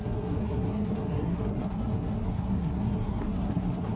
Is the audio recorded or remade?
remade